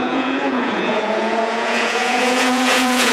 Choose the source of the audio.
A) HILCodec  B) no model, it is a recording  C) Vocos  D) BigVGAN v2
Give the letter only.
C